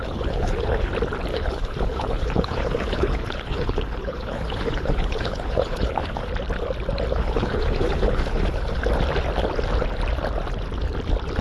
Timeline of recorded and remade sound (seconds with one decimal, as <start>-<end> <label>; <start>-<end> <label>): 0.0-0.9 remade; 0.9-1.3 recorded; 1.3-6.3 remade; 6.3-7.1 recorded; 7.1-8.8 remade; 8.8-11.4 recorded